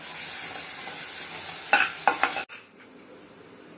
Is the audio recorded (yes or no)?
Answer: yes